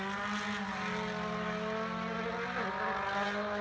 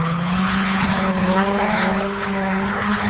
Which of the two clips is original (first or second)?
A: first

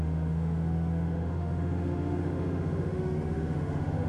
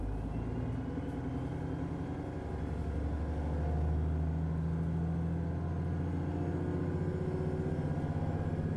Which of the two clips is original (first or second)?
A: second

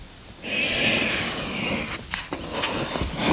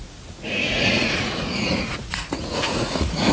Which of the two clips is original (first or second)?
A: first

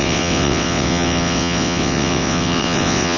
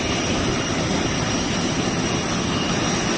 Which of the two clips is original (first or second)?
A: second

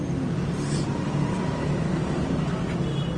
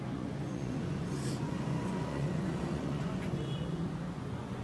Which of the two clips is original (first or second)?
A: first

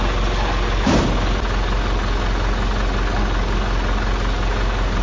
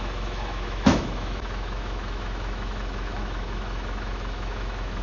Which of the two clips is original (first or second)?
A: first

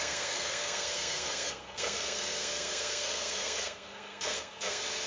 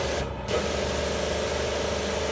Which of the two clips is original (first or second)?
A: second